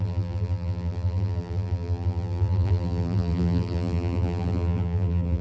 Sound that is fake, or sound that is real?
fake